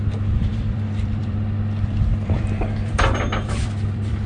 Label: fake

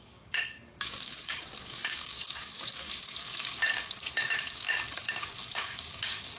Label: fake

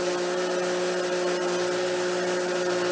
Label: real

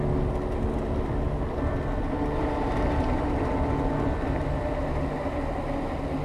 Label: real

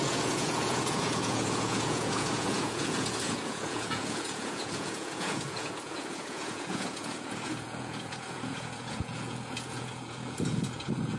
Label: fake